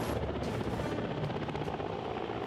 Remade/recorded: recorded